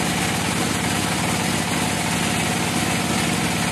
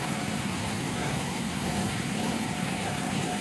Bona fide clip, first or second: first